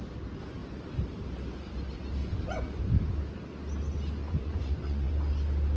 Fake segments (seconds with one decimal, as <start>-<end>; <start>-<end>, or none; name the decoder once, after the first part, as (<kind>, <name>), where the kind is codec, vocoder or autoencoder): 2.2-2.8 (vocoder, Vocos); 4.2-5.1

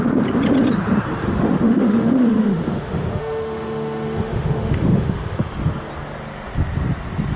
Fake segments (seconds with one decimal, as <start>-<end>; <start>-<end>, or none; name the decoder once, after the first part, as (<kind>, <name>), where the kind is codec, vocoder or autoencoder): 1.1-5.5 (autoencoder, DAC-VAE)